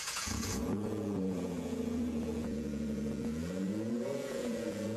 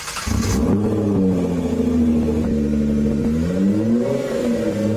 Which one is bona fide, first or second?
second